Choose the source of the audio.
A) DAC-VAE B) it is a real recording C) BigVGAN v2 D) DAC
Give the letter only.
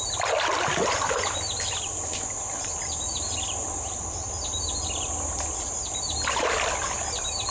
B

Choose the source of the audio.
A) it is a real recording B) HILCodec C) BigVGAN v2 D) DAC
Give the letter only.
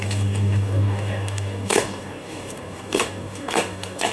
D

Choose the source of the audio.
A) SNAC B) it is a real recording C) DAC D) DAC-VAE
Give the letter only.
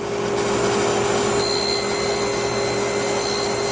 B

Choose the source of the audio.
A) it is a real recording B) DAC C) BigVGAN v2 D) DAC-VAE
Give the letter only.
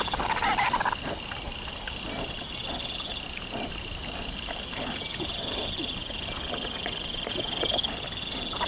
A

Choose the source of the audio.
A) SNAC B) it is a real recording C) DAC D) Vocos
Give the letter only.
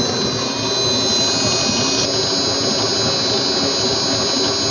B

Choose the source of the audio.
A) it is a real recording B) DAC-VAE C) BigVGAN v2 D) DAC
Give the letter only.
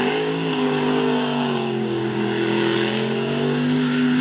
D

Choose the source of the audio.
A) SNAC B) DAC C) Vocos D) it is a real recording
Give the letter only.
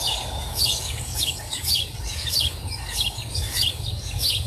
B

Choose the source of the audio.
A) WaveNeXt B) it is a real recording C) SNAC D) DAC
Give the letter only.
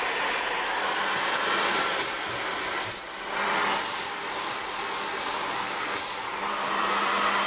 B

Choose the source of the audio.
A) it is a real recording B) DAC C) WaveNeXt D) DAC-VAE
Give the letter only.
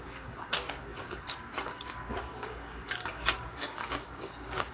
B